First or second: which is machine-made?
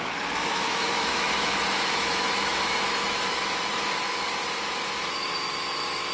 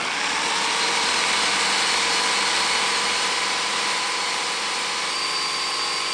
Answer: first